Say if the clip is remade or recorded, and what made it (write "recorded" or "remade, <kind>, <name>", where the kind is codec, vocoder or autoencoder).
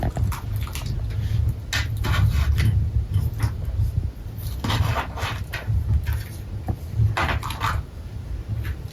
recorded